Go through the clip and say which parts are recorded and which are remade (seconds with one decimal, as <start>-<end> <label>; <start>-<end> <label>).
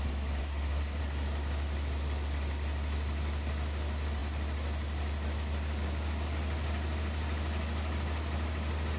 0.0-0.4 recorded; 0.4-1.0 remade; 1.0-9.0 recorded